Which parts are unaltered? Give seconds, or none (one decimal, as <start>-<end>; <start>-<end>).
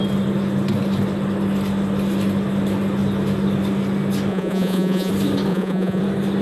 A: 0.0-4.3; 5.1-5.5; 6.0-6.4